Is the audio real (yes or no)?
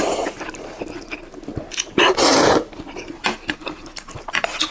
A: yes